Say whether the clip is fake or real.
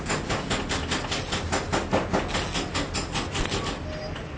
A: real